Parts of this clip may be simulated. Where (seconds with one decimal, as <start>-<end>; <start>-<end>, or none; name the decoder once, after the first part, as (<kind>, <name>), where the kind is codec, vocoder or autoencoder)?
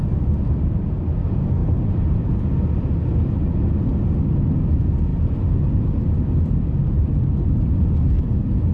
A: 0.0-1.1 (vocoder, BigVGAN v2); 1.6-2.4; 5.1-5.8